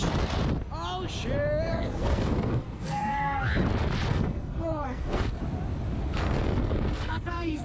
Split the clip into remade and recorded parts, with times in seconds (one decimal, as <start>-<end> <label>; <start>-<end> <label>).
0.0-1.7 recorded; 1.7-3.4 remade; 3.4-4.1 recorded; 4.1-5.4 remade; 5.4-6.1 recorded; 6.1-7.6 remade